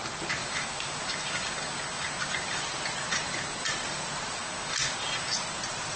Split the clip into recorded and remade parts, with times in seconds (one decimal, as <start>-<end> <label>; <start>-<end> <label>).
0.0-0.4 remade; 0.4-2.6 recorded; 2.6-4.4 remade; 4.4-5.0 recorded; 5.0-6.0 remade